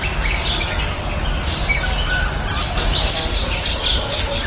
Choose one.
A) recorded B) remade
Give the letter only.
A